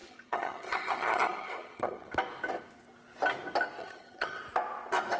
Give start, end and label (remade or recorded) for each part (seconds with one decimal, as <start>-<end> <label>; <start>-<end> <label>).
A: 0.0-2.1 remade; 2.1-3.8 recorded; 3.8-4.4 remade; 4.4-5.2 recorded